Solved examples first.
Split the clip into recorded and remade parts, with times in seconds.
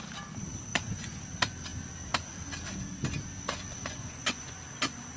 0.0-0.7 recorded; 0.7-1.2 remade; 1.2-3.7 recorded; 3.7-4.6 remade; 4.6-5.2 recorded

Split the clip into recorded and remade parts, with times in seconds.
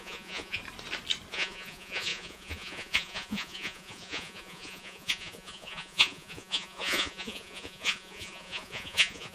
0.0-0.6 remade; 0.6-1.3 recorded; 1.3-9.3 remade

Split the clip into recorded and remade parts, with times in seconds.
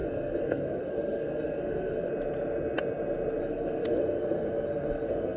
0.0-2.1 remade; 2.1-3.4 recorded; 3.4-5.4 remade